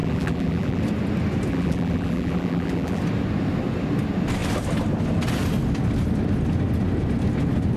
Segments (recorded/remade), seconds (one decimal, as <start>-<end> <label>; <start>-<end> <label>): 0.0-0.8 remade; 0.8-1.5 recorded; 1.5-3.0 remade; 3.0-7.8 recorded